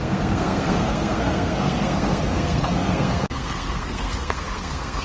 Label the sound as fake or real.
fake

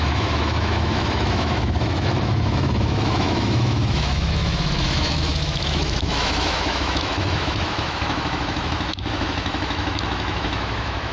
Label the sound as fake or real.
fake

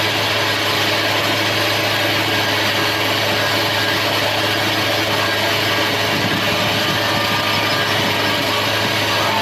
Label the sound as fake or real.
real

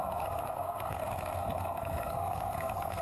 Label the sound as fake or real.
fake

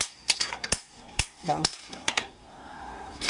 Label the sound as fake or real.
fake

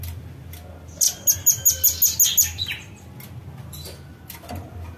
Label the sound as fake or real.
real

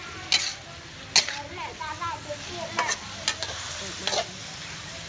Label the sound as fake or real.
real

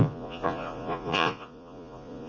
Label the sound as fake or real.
fake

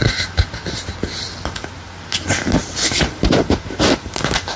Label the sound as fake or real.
real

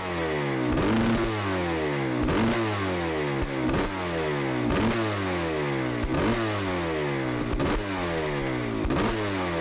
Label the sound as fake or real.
real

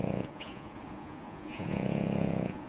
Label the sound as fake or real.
fake